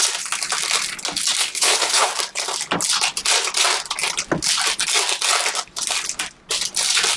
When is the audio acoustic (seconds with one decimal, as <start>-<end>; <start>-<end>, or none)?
0.0-1.4; 2.1-7.2